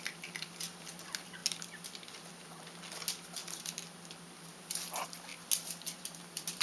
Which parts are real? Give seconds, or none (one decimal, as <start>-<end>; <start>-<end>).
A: 0.0-6.6